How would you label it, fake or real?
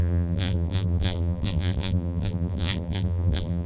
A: fake